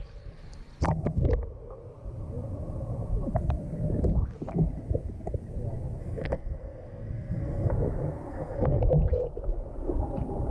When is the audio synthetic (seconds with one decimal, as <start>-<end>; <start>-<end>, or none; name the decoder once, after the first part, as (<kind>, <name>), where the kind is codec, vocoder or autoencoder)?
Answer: 6.0-7.7 (codec, SNAC); 8.3-8.8